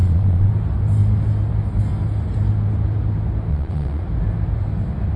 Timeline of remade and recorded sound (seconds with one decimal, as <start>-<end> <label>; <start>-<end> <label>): 0.0-0.5 remade; 0.5-3.5 recorded; 3.5-4.0 remade; 4.0-5.2 recorded